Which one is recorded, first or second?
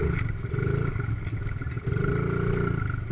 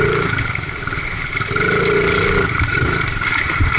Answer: first